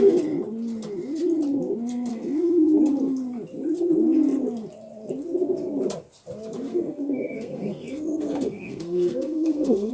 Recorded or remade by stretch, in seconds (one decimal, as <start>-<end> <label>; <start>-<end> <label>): 0.0-2.1 recorded; 2.1-2.8 remade; 2.8-6.7 recorded; 6.7-9.9 remade